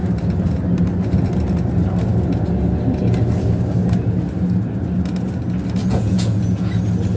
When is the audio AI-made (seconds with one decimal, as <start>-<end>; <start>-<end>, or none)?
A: 5.8-6.7